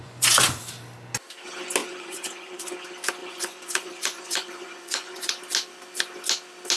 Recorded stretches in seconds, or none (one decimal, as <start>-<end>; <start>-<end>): 0.6-1.8; 2.7-3.2; 5.3-6.8